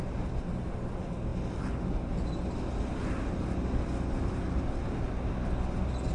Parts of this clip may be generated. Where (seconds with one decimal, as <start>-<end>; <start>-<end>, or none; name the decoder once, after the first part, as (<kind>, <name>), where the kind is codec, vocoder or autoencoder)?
none